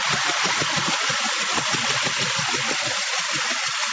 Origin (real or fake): real